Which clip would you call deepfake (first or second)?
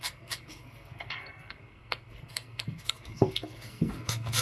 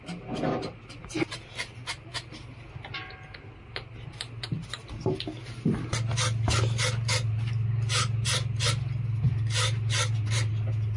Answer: first